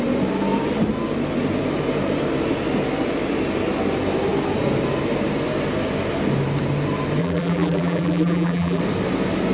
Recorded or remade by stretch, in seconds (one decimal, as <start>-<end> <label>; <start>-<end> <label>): 0.0-7.2 recorded; 7.2-8.8 remade; 8.8-9.5 recorded